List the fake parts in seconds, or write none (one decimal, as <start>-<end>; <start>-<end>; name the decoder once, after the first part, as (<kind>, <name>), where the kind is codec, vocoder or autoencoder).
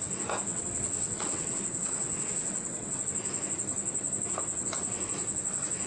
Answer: 0.5-3.0 (vocoder, WaveNeXt)